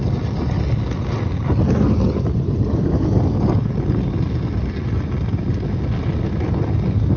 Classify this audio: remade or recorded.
recorded